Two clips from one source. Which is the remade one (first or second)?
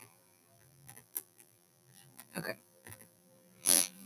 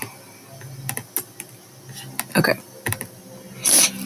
first